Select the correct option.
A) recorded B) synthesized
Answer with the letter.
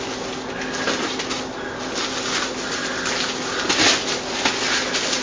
A